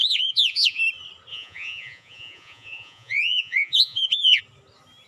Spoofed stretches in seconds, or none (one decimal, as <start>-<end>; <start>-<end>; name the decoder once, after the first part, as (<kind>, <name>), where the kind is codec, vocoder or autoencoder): 0.0-0.8 (vocoder, Vocos); 1.3-4.4